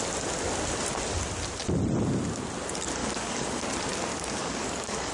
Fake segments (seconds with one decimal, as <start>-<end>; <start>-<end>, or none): 3.0-3.6; 4.1-5.1